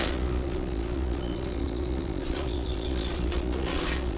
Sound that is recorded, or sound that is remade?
remade